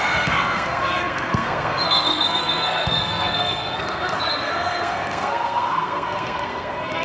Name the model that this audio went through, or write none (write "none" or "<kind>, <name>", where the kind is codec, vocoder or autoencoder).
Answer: codec, SNAC